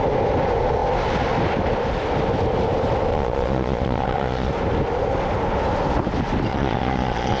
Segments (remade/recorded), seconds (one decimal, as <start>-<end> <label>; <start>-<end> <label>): 0.0-3.1 recorded; 3.1-4.5 remade; 4.5-6.5 recorded; 6.5-7.4 remade